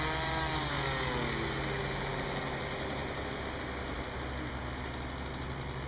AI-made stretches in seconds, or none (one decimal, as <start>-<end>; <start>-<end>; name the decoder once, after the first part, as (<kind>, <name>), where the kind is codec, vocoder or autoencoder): none